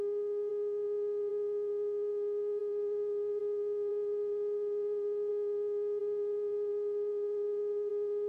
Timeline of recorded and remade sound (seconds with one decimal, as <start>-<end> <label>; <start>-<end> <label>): 0.0-2.6 recorded; 2.6-3.4 remade; 3.4-3.9 recorded; 3.9-5.3 remade; 5.3-6.0 recorded; 6.0-7.9 remade; 7.9-8.3 recorded